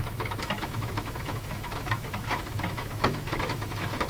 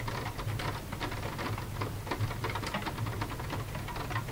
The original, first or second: second